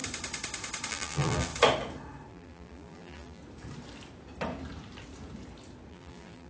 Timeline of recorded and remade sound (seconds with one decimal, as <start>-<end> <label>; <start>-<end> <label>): 0.0-0.9 recorded; 0.9-1.5 remade; 1.5-2.3 recorded; 2.3-3.4 remade; 3.4-5.9 recorded; 5.9-6.5 remade